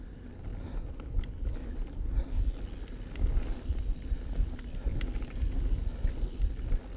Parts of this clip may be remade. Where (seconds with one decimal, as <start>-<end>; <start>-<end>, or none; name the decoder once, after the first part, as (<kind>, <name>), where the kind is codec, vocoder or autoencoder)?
none